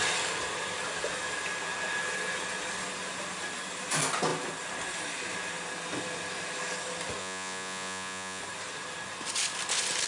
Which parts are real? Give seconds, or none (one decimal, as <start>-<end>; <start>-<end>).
0.0-7.2; 8.4-10.1